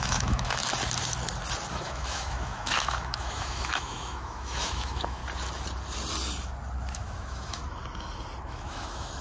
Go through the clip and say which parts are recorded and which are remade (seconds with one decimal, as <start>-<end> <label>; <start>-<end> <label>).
0.0-0.6 remade; 0.6-1.7 recorded; 1.7-5.2 remade; 5.2-6.9 recorded; 6.9-7.6 remade; 7.6-8.4 recorded; 8.4-9.2 remade